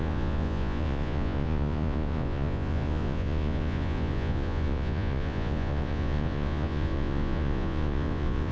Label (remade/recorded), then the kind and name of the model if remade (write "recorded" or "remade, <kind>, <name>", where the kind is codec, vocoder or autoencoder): remade, vocoder, Vocos